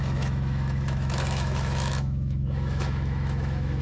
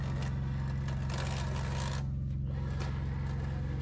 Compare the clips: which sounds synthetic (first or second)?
first